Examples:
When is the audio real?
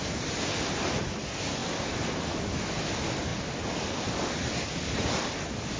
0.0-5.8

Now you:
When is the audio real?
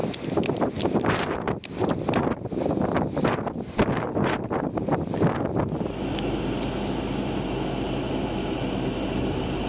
0.0-9.7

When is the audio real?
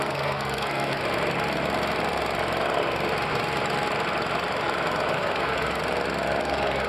1.0-5.1; 5.8-6.4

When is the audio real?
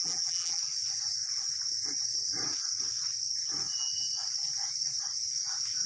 0.6-5.9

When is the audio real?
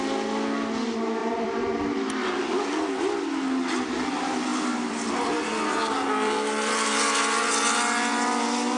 0.0-1.2; 2.9-8.8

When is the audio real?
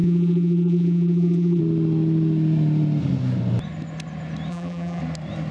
1.6-4.5; 5.0-5.5